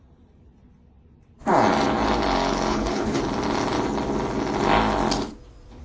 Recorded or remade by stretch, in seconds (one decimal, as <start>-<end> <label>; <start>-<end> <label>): 0.0-2.7 recorded; 2.7-3.2 remade; 3.2-5.8 recorded